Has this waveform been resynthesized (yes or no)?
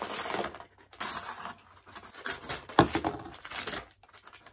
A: no